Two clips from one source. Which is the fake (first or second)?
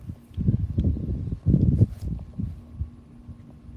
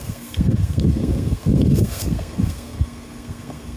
second